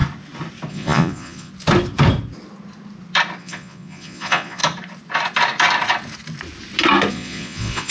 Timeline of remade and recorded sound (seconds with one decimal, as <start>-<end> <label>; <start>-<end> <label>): 0.0-0.7 recorded; 0.7-1.5 remade; 1.5-3.4 recorded; 3.4-4.6 remade; 4.6-7.1 recorded; 7.1-7.9 remade